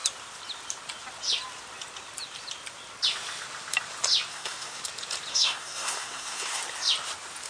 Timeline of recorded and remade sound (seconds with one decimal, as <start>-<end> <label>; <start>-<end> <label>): 0.0-4.3 recorded; 4.3-4.8 remade; 4.8-5.3 recorded; 5.3-6.6 remade; 6.6-7.5 recorded

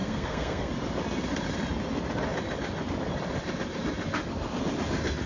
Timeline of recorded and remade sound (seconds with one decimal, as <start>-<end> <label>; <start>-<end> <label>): 0.0-0.7 remade; 0.7-5.3 recorded

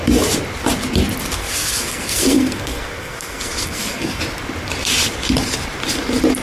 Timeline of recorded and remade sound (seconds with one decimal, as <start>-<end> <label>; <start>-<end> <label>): 0.0-1.4 recorded; 1.4-4.2 remade; 4.2-6.4 recorded

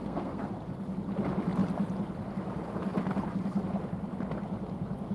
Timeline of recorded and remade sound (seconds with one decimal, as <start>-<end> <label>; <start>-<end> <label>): 0.0-0.5 remade; 0.5-5.1 recorded

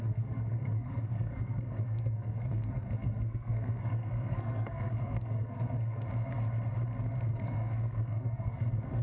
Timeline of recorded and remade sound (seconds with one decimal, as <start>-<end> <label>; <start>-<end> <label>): 0.0-6.1 remade; 6.1-7.3 recorded; 7.3-9.0 remade